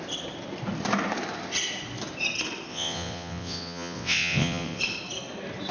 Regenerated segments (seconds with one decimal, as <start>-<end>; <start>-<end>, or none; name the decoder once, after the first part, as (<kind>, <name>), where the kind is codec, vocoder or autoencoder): 2.7-4.8 (vocoder, WaveNeXt)